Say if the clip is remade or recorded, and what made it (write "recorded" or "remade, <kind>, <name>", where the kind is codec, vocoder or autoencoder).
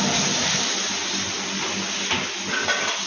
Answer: recorded